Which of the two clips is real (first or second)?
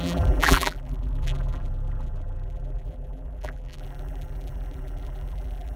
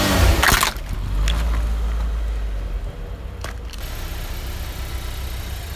second